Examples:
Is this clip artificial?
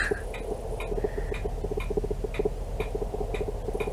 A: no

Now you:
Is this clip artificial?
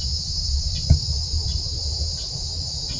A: no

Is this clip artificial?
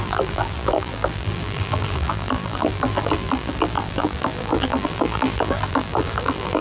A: yes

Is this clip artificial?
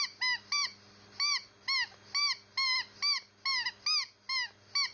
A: no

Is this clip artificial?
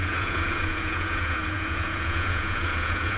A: yes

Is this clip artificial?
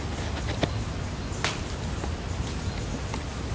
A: no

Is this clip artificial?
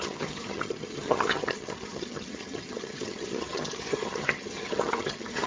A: yes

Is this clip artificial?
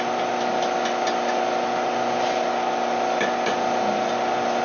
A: no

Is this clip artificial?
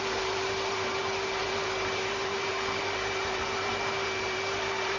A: yes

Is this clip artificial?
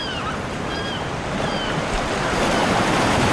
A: yes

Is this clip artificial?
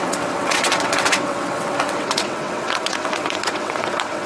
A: yes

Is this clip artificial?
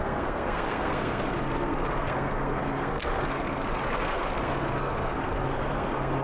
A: yes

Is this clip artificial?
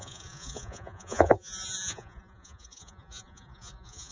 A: yes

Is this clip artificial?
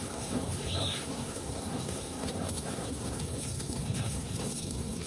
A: yes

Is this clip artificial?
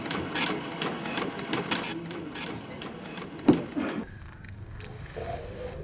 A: no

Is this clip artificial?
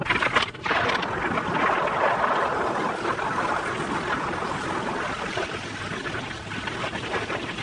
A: no